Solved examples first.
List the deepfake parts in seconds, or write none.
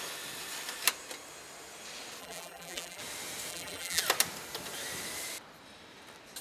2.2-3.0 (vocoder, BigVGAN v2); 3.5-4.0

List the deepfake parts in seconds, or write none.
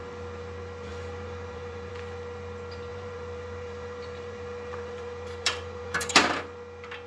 0.9-1.9 (vocoder, BigVGAN v2); 2.9-6.4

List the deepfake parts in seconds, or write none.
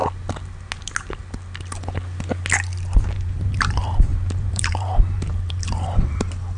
3.0-6.6 (vocoder, BigVGAN v2)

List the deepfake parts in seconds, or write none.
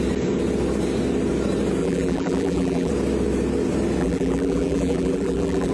1.8-2.9 (vocoder, BigVGAN v2); 4.0-5.7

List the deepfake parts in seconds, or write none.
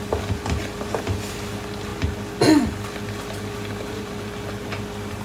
none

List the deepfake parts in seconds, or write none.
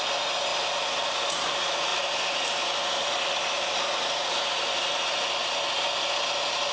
0.5-1.5 (vocoder, BigVGAN v2); 1.9-5.1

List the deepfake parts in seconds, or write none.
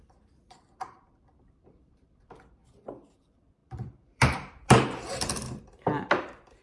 0.0-2.6 (vocoder, BigVGAN v2); 3.2-6.6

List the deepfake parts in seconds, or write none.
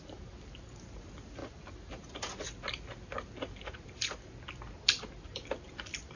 none